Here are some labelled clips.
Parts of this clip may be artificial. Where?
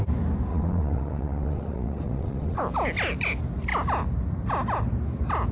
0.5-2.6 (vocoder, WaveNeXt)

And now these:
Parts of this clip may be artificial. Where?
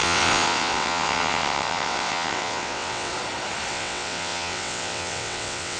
0.0-3.1 (vocoder, WaveNeXt); 3.7-5.8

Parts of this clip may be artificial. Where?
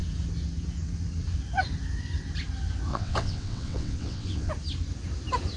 2.9-4.5 (vocoder, WaveNeXt)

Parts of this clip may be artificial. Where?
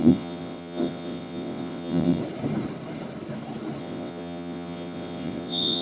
0.0-2.2 (vocoder, WaveNeXt); 3.8-5.8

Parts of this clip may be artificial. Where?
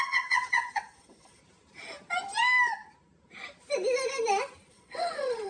0.0-1.4 (vocoder, WaveNeXt); 4.7-5.5